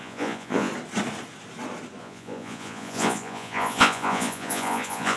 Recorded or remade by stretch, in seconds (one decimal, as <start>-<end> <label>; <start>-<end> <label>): 0.0-0.7 remade; 0.7-2.0 recorded; 2.0-5.2 remade